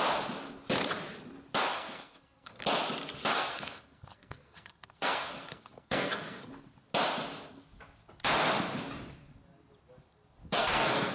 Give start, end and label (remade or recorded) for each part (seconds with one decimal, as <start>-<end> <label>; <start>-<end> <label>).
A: 0.0-1.7 recorded; 1.7-2.6 remade; 2.6-3.3 recorded; 3.3-6.5 remade; 6.5-10.4 recorded; 10.4-11.1 remade